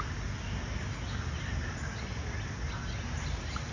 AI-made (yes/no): no